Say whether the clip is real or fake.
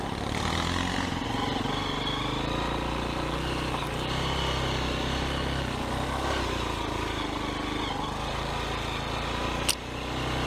real